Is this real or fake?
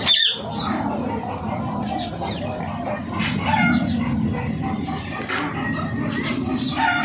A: real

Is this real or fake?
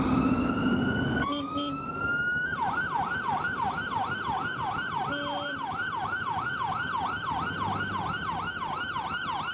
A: real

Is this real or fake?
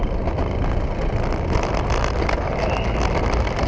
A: real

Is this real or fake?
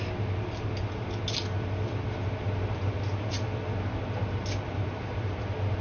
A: real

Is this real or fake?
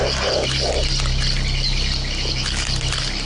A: real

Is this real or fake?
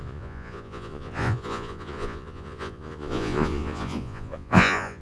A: fake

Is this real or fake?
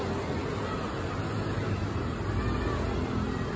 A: real